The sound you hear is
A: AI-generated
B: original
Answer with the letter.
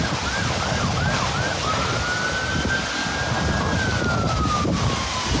B